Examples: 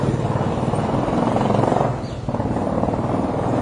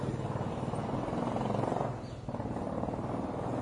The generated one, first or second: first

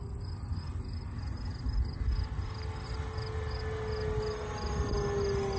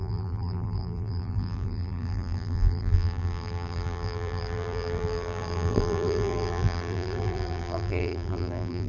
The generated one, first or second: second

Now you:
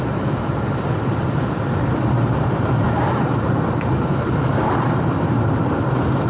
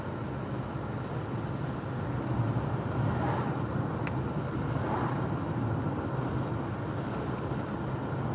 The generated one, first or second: first